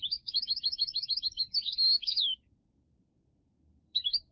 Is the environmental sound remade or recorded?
remade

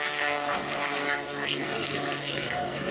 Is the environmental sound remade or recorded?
remade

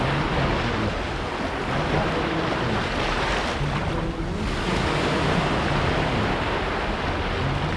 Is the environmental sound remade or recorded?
recorded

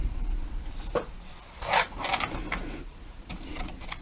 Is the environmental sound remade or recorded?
recorded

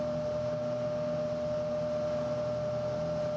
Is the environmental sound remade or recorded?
recorded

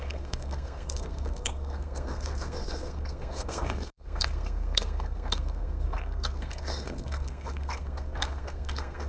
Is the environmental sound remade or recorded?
remade